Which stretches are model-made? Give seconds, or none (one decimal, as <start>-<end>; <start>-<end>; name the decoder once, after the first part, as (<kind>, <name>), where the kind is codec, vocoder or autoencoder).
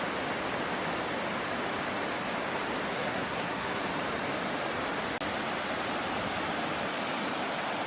2.9-3.8 (codec, SNAC)